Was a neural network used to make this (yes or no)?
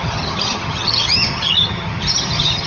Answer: yes